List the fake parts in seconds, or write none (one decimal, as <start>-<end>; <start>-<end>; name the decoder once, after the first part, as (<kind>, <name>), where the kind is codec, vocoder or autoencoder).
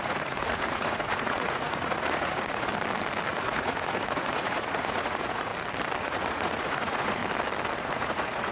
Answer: 0.0-2.7 (vocoder, Vocos); 3.3-5.5; 6.0-7.2; 7.8-8.5